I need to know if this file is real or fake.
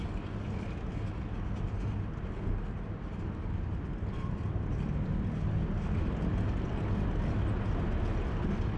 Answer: real